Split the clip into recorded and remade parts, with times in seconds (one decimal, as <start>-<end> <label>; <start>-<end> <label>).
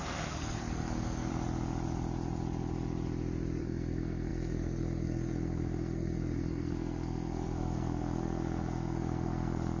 0.0-1.3 remade; 1.3-3.6 recorded; 3.6-9.8 remade